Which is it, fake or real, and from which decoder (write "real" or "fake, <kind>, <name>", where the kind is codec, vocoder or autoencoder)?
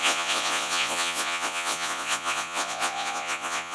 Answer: fake, vocoder, Vocos